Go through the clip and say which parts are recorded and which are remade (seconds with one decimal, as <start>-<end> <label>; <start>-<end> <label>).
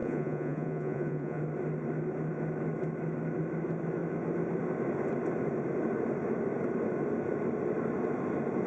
0.0-1.4 remade; 1.4-8.7 recorded